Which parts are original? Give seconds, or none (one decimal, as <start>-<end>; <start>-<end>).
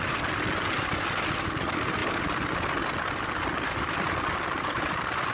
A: 0.0-5.3